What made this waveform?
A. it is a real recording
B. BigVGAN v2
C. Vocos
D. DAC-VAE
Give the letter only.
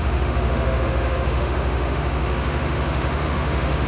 D